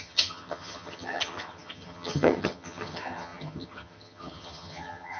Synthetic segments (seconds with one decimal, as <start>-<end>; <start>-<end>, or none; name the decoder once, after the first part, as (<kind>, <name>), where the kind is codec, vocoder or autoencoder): 0.0-5.2 (vocoder, HiFi-GAN)